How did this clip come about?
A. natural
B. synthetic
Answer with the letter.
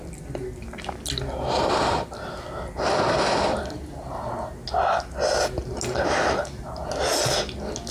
A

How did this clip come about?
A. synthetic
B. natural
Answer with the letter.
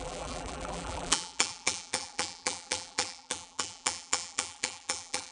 A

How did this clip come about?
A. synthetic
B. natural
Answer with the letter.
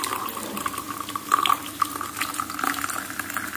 B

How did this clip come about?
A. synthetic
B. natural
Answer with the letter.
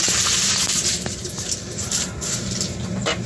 A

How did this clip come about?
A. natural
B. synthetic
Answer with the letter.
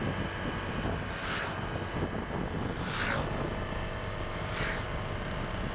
A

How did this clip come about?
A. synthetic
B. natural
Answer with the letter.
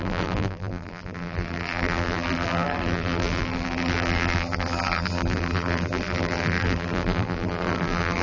A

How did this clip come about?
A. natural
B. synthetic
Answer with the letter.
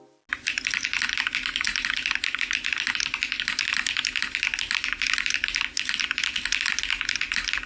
A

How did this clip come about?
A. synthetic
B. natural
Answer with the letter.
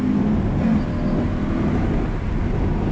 B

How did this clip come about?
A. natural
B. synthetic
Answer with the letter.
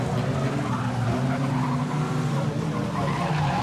A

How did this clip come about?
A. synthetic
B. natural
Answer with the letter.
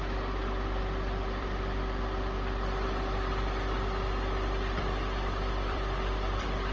A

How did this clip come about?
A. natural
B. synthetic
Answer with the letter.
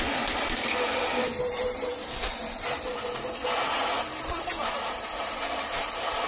B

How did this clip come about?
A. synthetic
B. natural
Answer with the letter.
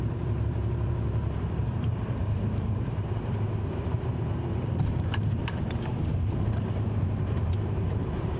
A